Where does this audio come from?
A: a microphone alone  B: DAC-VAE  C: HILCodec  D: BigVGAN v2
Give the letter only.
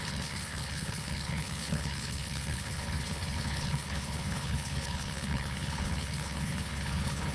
C